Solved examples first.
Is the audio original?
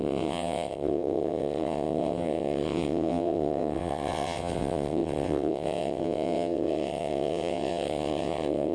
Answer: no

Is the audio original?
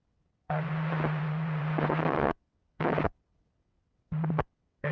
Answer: no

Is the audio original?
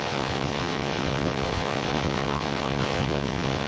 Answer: no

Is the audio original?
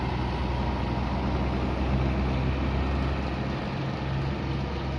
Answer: yes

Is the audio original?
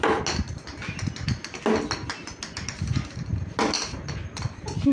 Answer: yes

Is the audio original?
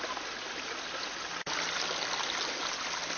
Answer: yes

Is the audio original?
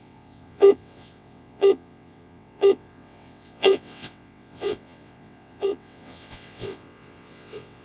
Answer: no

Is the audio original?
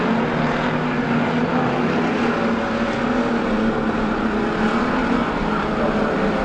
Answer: yes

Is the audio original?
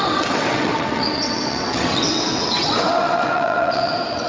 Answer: no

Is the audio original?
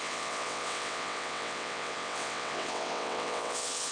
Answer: no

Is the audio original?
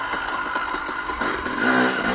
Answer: yes